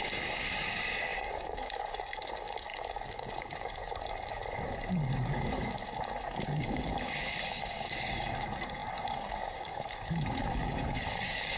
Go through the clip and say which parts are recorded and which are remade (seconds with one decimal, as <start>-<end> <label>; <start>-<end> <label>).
0.0-11.6 remade